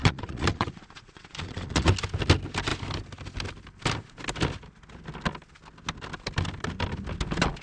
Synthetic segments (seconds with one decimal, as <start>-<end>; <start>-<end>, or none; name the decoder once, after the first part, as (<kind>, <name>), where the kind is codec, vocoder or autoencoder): 0.0-1.9 (vocoder, Vocos)